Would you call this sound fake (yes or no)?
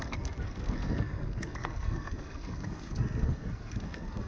yes